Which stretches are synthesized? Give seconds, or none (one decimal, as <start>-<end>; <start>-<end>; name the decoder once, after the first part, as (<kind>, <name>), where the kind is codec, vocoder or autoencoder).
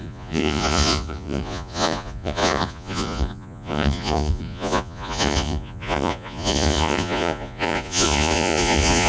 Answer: 0.0-9.1 (vocoder, Vocos)